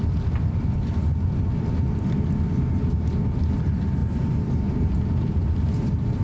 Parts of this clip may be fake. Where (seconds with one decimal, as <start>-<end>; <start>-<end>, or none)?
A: none

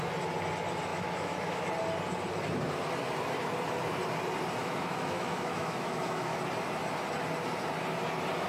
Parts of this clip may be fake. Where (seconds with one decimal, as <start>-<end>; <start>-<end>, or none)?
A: 0.9-1.7; 4.6-6.4

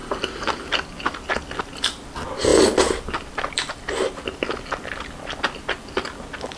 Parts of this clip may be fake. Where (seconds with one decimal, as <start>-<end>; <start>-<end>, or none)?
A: none

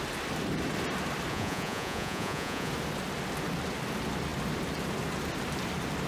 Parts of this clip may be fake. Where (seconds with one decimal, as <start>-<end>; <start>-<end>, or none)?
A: 1.3-2.7

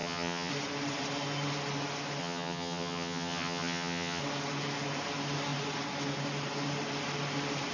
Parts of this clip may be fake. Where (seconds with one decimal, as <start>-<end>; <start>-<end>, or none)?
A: 0.0-0.5; 2.2-4.2